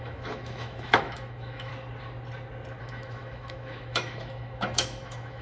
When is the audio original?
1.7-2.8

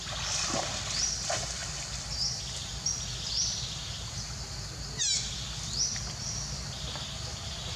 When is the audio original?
0.0-7.8

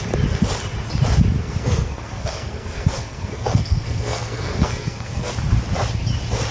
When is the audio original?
0.0-1.4; 5.3-6.5

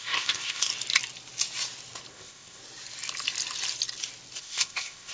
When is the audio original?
0.7-2.1; 2.6-4.4

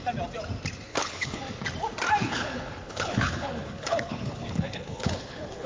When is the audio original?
0.0-0.9; 1.4-2.2